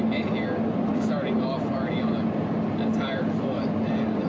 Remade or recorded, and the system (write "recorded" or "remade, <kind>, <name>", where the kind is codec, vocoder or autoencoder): recorded